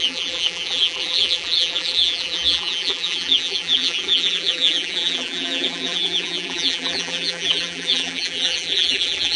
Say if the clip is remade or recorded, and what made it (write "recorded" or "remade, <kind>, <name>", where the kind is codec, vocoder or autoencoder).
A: remade, vocoder, BigVGAN v2